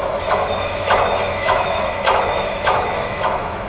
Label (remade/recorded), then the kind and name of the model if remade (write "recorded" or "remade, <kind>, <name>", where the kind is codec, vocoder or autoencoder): remade, autoencoder, DAC-VAE